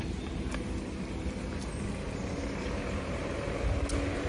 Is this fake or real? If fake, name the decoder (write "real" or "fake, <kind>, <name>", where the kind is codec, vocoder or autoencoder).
real